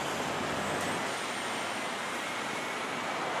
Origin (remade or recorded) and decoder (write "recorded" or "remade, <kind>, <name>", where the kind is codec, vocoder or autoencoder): recorded